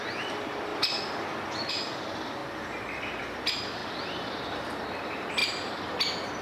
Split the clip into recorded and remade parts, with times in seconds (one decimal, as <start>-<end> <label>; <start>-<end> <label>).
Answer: 0.0-0.7 remade; 0.7-1.7 recorded; 1.7-2.4 remade; 2.4-3.2 recorded; 3.2-3.8 remade; 3.8-4.7 recorded; 4.7-5.4 remade; 5.4-6.4 recorded